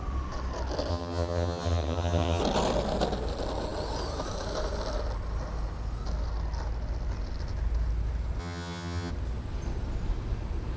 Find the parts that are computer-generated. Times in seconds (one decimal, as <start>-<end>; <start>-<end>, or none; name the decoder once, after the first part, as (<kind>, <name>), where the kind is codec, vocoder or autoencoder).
0.9-2.4 (vocoder, HiFi-GAN); 8.4-9.1